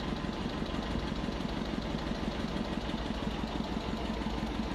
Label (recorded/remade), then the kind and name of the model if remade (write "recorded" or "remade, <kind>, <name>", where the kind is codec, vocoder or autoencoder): recorded